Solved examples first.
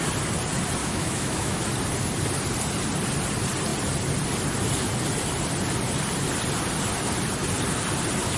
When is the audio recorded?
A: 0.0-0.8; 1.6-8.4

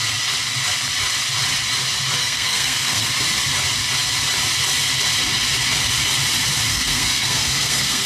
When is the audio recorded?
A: 0.0-2.2; 3.1-6.7

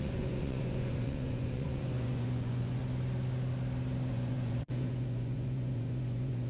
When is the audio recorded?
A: 2.8-4.1

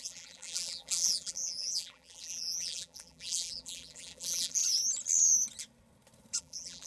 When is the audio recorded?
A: 4.6-6.4